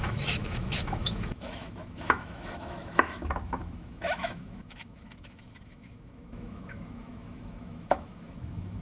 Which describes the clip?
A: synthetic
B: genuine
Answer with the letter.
A